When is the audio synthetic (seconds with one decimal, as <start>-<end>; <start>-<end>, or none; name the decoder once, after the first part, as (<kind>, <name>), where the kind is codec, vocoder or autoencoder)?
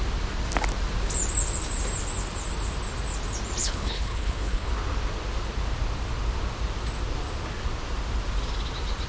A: 3.6-4.7 (codec, HILCodec)